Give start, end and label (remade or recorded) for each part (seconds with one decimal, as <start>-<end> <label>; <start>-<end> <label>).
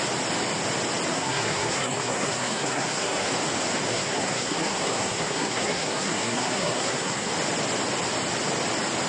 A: 0.0-1.1 recorded; 1.1-3.3 remade; 3.3-3.9 recorded; 3.9-7.3 remade; 7.3-9.1 recorded